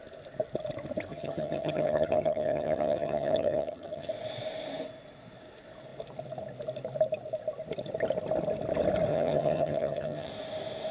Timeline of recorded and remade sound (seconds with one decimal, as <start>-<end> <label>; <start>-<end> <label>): 0.0-1.1 recorded; 1.1-4.1 remade; 4.1-9.1 recorded; 9.1-10.3 remade; 10.3-10.9 recorded